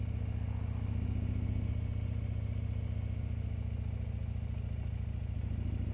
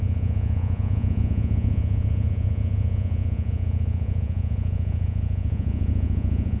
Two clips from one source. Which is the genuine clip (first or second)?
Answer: first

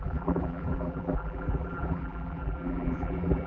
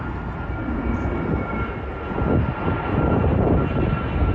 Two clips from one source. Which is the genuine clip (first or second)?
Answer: second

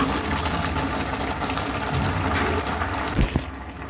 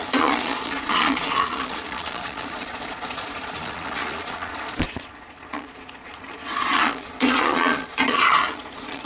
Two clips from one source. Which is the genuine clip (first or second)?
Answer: first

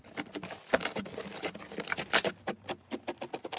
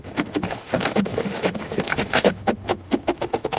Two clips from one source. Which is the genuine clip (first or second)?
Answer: first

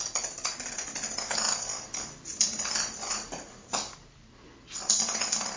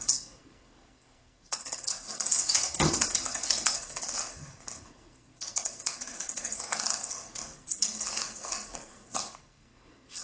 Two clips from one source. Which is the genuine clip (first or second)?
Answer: first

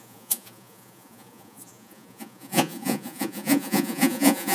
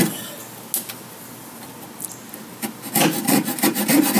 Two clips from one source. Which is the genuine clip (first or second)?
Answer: second